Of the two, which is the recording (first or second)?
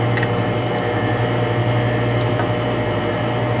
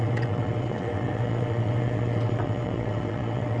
first